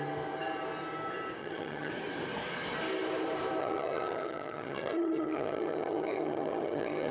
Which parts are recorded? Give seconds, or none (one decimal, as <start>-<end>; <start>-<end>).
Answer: 0.0-1.4; 1.9-3.6